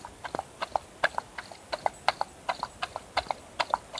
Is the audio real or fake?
real